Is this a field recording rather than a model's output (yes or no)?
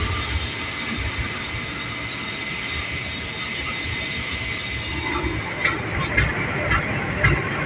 yes